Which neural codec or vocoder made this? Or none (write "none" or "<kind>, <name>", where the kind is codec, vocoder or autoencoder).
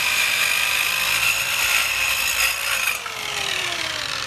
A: vocoder, BigVGAN v2